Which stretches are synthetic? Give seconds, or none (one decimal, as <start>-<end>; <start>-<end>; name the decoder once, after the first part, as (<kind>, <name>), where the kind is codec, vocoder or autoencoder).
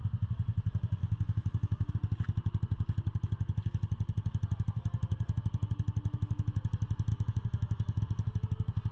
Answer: 1.0-1.9 (autoencoder, DAC-VAE); 7.1-8.0